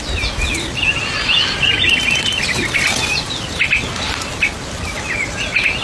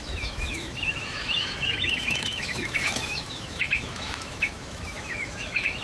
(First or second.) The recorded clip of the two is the first